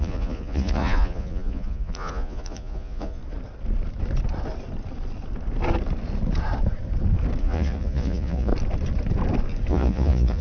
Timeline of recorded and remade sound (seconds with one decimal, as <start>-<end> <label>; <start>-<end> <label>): 0.0-3.2 remade; 3.2-7.4 recorded; 7.4-8.5 remade; 8.5-9.7 recorded; 9.7-10.4 remade